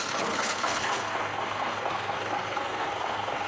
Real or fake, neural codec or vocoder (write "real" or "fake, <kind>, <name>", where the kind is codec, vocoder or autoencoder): fake, codec, SNAC